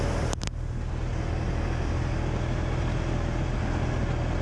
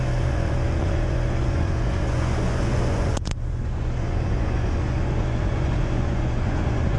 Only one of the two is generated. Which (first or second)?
second